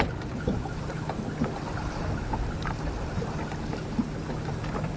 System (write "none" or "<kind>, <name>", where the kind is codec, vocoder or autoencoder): none